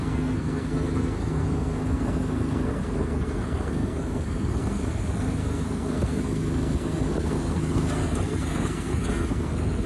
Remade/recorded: remade